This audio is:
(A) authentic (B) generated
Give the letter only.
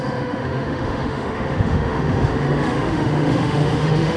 B